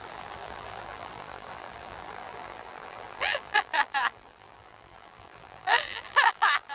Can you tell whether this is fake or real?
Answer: fake